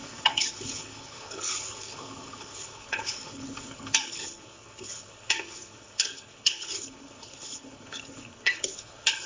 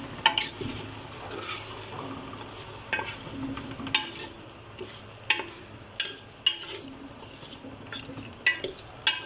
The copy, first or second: first